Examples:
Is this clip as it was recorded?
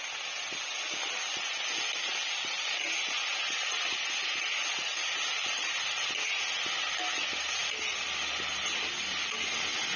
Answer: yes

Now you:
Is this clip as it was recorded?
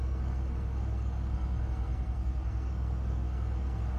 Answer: no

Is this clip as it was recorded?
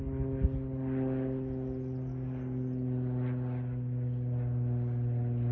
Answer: yes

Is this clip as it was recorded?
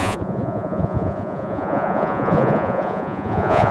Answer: no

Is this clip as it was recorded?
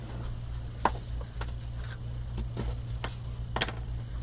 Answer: yes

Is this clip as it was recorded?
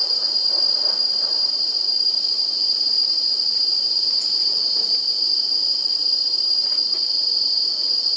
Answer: yes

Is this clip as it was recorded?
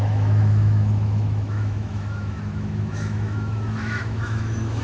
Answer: no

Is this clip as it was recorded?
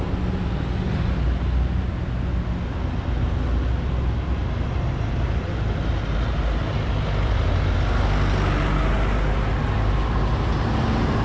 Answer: yes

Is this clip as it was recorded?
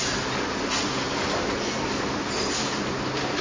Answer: yes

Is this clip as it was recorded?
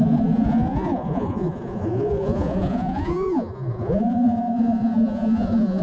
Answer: no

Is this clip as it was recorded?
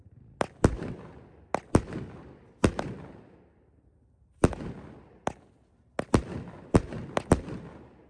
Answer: yes